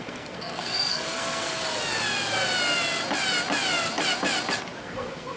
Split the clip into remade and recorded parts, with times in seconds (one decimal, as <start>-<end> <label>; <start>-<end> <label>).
0.0-1.6 remade; 1.6-4.8 recorded; 4.8-5.4 remade